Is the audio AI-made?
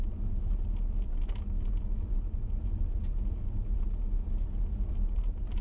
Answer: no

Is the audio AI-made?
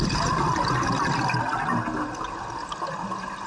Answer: no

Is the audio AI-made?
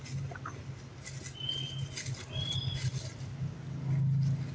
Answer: no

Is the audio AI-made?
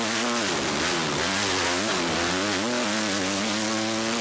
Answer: no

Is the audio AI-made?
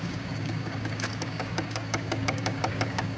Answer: yes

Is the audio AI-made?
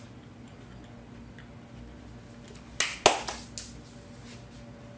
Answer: no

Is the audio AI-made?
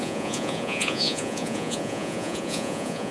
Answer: yes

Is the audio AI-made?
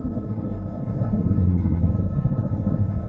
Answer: yes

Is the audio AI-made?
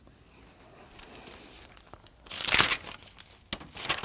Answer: no